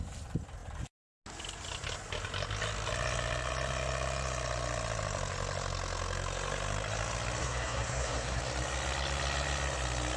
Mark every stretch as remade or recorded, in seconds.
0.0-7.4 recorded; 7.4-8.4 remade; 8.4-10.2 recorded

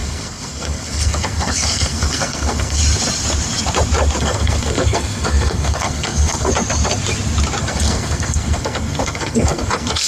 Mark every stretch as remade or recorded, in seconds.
0.0-2.8 remade; 2.8-4.2 recorded; 4.2-6.5 remade; 6.5-7.6 recorded; 7.6-10.1 remade

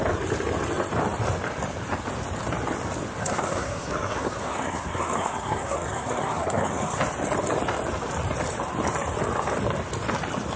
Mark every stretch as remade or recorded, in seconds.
0.0-3.2 recorded; 3.2-7.0 remade; 7.0-10.6 recorded

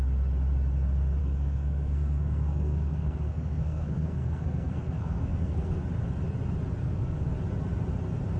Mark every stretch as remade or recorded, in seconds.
0.0-1.2 recorded; 1.2-5.8 remade; 5.8-6.8 recorded; 6.8-7.3 remade; 7.3-8.4 recorded

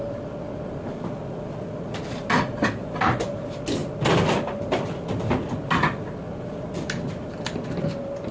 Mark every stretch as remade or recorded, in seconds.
0.0-8.3 recorded

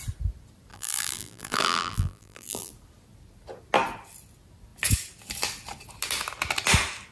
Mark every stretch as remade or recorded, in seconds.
0.0-0.7 recorded; 0.7-2.7 remade; 2.7-7.1 recorded